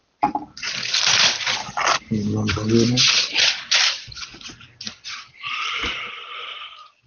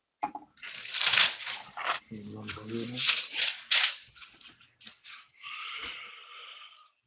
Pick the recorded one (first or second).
second